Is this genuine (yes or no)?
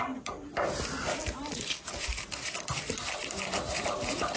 yes